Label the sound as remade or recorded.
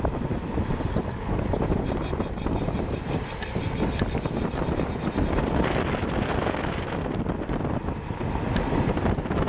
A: remade